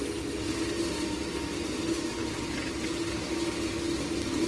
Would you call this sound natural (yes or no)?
yes